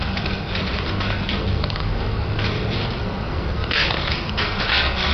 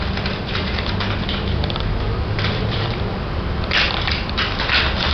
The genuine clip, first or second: second